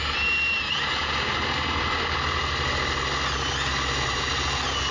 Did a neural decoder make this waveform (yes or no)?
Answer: no